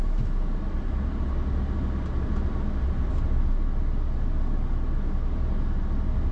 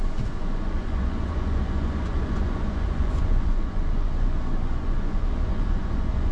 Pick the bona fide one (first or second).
first